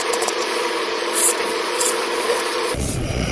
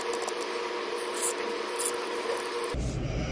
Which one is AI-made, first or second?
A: first